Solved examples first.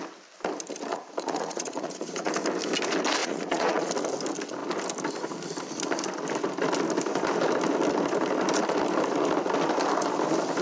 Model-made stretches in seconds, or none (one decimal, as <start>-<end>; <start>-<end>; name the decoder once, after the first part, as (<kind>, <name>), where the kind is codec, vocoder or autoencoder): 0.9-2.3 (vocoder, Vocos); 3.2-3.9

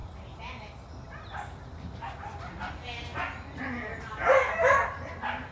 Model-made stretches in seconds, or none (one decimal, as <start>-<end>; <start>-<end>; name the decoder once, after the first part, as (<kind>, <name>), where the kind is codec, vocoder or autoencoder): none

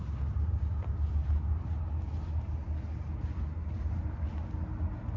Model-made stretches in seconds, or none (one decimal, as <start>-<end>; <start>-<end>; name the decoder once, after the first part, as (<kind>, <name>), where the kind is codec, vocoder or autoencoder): none

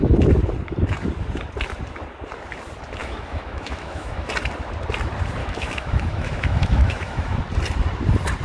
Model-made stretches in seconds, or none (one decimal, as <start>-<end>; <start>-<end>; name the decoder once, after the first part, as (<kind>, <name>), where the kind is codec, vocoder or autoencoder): 3.0-4.3 (autoencoder, DAC-VAE); 5.4-7.4

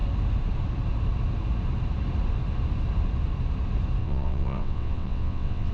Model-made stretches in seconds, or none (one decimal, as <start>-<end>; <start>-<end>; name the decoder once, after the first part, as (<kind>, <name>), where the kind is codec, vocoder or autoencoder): 4.0-5.7 (vocoder, WaveNeXt)

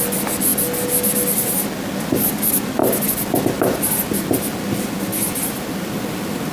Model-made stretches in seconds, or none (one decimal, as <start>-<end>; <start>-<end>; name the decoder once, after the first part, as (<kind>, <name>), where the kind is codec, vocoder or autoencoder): 2.8-3.4 (vocoder, BigVGAN v2); 5.1-6.5